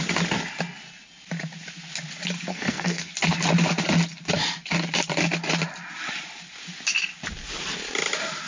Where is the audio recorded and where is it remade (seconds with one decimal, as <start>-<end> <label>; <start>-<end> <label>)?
0.0-2.5 recorded; 2.5-3.1 remade; 3.1-8.5 recorded